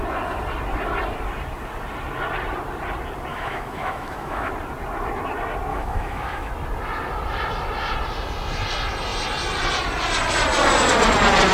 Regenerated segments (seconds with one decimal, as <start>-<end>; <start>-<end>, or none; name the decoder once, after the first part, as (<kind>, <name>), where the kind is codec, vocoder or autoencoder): 3.3-4.5 (autoencoder, DAC-VAE); 5.7-6.5